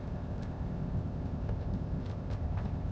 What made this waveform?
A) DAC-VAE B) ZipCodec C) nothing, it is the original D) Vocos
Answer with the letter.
B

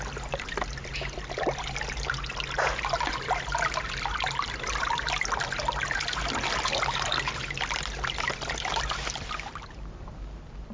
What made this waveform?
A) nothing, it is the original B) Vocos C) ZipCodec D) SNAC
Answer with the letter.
A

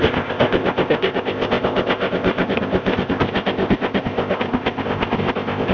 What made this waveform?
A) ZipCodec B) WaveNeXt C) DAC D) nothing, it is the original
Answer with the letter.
A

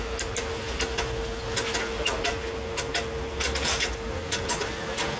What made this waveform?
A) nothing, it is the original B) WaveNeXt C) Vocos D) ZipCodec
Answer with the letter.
A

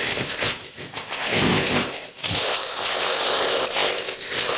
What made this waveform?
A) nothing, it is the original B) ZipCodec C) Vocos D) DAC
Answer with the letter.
B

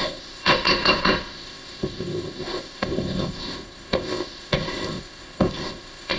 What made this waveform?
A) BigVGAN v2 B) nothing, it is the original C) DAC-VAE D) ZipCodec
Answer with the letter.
D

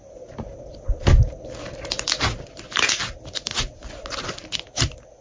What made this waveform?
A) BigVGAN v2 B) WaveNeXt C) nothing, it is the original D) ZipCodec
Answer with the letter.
C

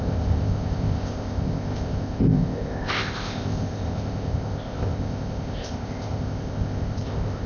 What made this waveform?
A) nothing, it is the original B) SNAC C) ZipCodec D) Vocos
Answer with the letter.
C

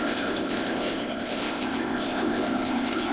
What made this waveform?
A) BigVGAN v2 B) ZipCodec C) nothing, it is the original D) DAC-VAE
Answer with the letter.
B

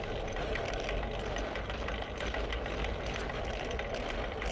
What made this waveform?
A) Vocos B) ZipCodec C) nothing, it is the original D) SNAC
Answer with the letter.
C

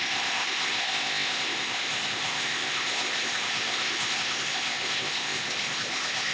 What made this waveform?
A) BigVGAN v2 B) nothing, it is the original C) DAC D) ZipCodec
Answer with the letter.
D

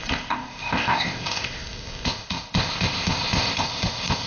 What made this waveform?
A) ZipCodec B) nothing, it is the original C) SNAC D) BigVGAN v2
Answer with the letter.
A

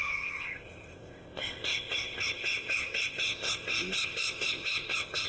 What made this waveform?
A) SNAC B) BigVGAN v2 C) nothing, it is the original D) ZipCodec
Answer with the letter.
D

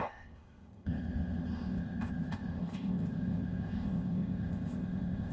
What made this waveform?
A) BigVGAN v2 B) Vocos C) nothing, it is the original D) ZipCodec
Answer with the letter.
D